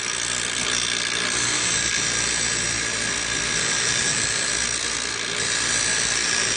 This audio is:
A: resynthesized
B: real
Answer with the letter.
B